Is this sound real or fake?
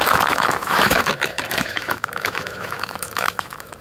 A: fake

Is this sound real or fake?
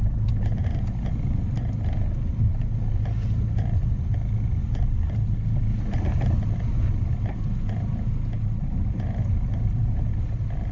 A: real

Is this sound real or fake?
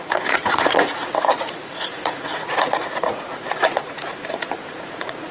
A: fake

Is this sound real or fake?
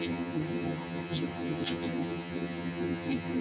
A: fake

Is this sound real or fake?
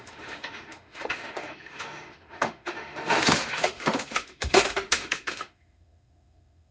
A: fake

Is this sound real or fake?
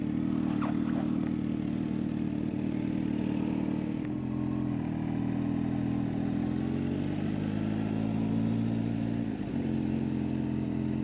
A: real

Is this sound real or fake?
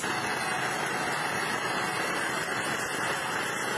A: real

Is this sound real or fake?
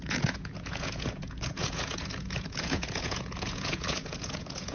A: fake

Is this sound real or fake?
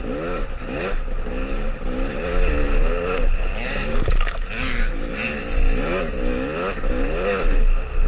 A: real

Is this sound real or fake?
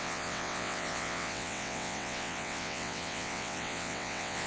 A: fake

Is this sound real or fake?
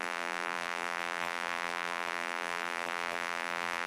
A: fake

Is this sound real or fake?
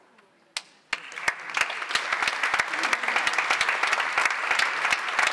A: real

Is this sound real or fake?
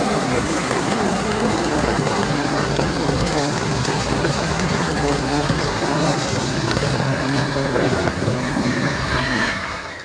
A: fake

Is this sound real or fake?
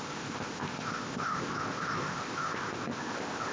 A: fake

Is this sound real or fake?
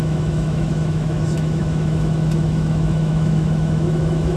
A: fake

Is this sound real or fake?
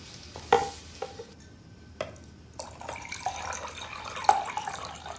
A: real